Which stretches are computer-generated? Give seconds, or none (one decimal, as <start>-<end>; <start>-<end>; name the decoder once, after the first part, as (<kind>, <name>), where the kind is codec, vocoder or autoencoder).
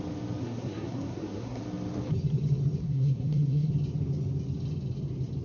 0.4-1.6 (codec, SNAC); 2.8-3.7